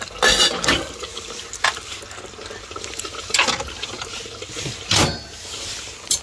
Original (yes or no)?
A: yes